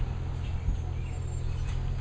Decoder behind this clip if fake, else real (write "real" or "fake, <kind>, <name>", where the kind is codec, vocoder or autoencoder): real